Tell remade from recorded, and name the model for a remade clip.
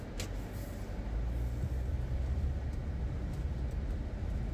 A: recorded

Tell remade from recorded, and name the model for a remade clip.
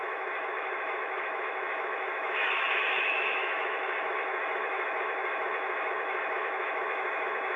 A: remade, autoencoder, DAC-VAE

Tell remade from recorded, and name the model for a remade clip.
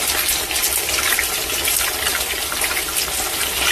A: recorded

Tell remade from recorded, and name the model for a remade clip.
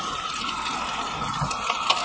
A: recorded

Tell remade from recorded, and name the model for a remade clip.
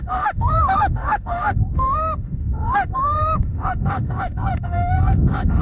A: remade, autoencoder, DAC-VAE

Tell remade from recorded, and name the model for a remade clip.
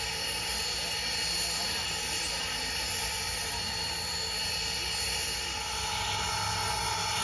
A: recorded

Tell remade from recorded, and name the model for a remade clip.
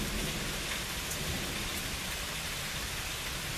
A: recorded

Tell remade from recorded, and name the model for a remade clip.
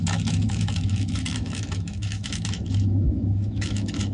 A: remade, autoencoder, DAC-VAE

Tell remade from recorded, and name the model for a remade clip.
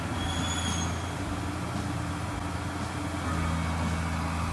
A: recorded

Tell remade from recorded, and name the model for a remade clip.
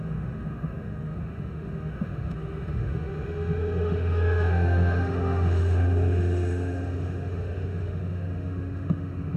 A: remade, autoencoder, DAC-VAE